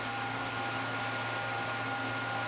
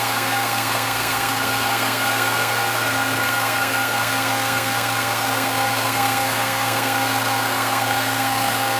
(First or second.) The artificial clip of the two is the second